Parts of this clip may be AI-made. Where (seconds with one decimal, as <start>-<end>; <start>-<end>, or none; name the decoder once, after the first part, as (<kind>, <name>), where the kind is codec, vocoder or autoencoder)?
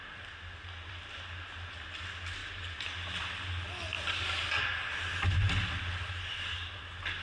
none